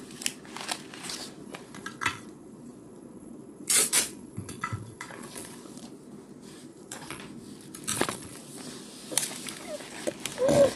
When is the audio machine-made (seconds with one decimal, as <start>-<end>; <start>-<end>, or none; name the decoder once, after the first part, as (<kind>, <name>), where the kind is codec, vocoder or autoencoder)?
1.4-5.9 (vocoder, Vocos); 6.7-7.2; 7.9-8.6